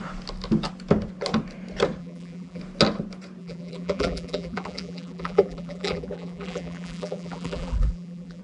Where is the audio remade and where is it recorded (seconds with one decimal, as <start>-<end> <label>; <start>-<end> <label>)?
0.0-2.0 recorded; 2.0-2.6 remade; 2.6-3.4 recorded; 3.4-8.4 remade